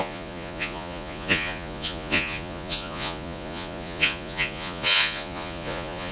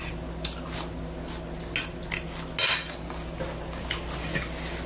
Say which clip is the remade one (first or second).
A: first